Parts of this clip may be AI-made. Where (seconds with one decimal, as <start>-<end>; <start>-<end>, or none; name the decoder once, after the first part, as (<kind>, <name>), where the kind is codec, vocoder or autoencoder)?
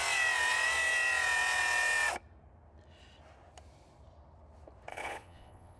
4.9-5.8 (vocoder, Vocos)